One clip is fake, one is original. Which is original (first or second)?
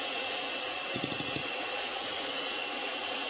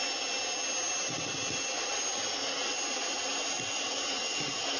second